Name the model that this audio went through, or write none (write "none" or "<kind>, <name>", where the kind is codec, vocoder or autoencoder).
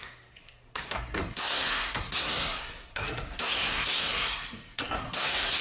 codec, SNAC